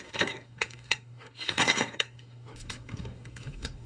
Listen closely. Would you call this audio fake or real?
fake